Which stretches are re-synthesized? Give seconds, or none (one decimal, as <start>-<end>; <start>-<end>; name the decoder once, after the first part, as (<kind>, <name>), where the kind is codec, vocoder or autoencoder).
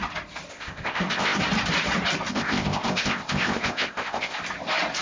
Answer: 0.5-1.4 (codec, ZipCodec); 2.3-4.4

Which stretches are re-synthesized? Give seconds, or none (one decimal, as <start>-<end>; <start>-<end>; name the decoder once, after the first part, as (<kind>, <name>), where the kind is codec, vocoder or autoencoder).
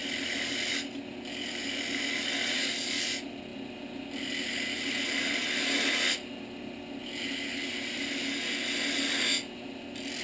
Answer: none